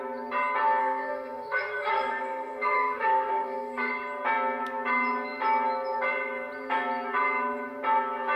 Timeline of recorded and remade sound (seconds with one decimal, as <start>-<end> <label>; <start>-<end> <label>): 0.0-0.8 recorded; 0.8-3.9 remade; 3.9-8.4 recorded